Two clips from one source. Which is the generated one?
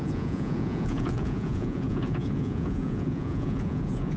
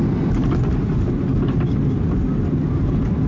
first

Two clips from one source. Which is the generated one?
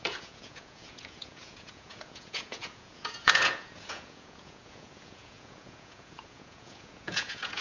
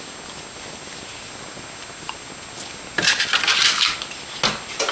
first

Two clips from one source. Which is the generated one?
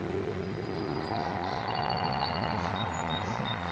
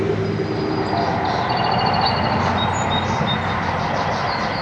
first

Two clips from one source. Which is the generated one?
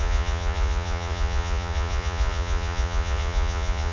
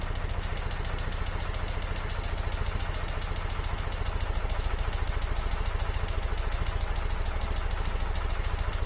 first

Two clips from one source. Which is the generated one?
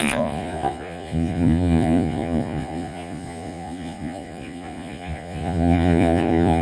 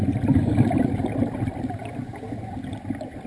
first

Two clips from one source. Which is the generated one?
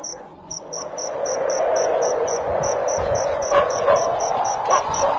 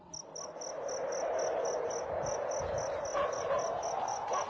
first